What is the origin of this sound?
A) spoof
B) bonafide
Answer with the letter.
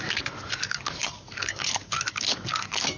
A